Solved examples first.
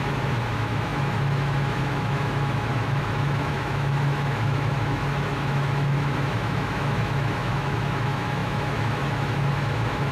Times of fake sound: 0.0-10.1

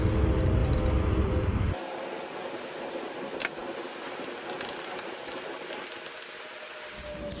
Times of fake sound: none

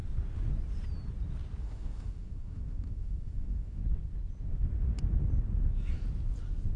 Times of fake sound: 1.6-3.8

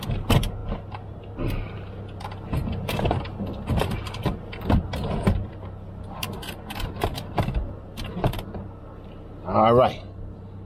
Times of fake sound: none

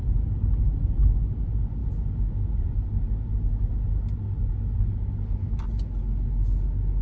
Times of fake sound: none